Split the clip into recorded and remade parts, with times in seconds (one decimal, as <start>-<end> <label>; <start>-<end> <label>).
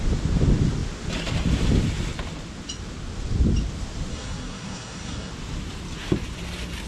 0.0-4.1 recorded; 4.1-5.3 remade; 5.3-6.9 recorded